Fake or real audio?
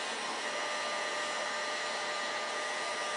real